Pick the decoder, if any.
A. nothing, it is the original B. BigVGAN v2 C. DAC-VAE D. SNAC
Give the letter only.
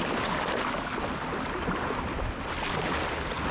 A